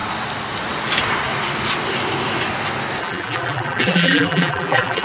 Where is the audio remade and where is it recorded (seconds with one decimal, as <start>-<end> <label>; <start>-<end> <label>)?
0.0-3.0 recorded; 3.0-5.0 remade